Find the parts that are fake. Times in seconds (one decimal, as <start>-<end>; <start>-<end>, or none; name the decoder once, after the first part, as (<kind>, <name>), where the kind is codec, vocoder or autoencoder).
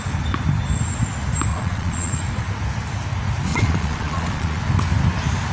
1.5-2.2 (vocoder, Vocos); 3.5-4.6